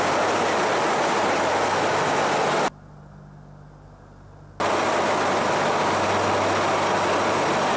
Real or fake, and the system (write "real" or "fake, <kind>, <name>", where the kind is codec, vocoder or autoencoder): real